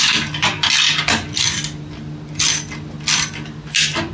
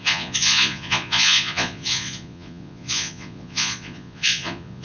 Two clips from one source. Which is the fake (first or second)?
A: second